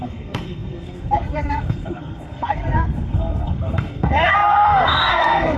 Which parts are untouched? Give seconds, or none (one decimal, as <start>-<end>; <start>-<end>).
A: none